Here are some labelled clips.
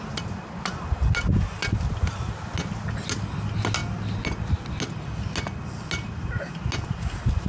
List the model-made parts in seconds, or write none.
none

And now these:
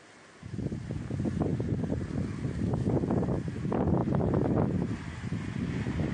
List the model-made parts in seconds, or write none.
4.0-4.6 (vocoder, BigVGAN v2)

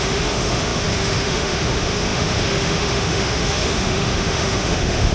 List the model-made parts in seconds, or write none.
0.0-5.1 (autoencoder, DAC-VAE)

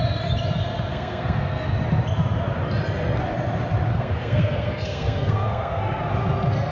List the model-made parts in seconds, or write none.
0.9-1.7 (codec, SNAC); 3.9-5.8

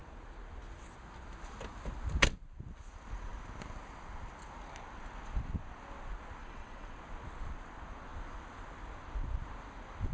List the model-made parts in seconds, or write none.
6.4-7.0 (vocoder, WaveNeXt)

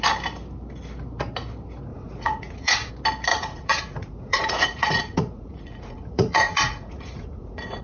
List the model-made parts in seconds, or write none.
1.9-2.9 (vocoder, Vocos); 3.3-7.8